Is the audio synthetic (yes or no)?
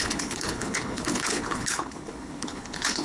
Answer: yes